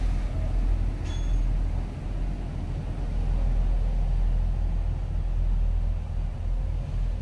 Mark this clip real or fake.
real